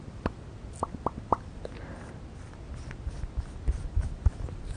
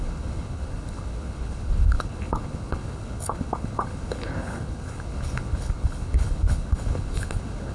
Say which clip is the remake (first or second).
second